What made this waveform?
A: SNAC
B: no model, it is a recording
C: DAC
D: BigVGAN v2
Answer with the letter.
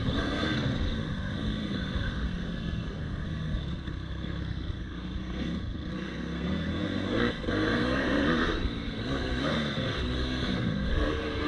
A